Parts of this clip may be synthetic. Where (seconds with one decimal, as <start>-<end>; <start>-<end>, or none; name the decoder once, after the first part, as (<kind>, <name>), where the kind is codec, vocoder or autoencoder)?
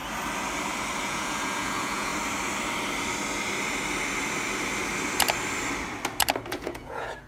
1.0-2.1 (vocoder, Vocos); 6.5-7.3